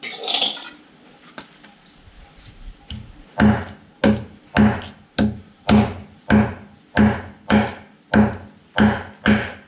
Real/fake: real